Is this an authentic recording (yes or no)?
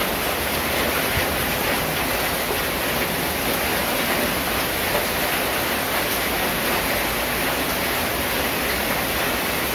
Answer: yes